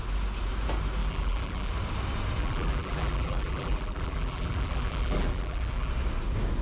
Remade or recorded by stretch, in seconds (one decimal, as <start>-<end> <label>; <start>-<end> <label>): 0.0-1.0 recorded; 1.0-1.7 remade; 1.7-2.4 recorded; 2.4-5.9 remade; 5.9-6.6 recorded